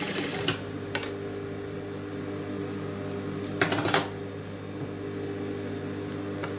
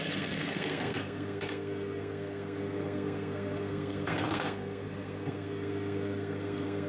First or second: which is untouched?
first